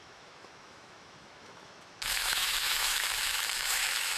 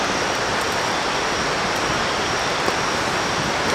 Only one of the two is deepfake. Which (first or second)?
first